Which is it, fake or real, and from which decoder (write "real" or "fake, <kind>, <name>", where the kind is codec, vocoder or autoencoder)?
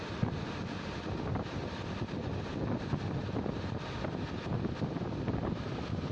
real